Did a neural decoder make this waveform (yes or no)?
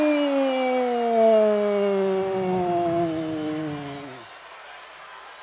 no